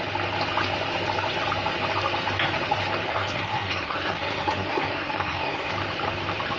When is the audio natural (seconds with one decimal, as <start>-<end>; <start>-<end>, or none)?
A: 0.0-3.1; 5.7-6.6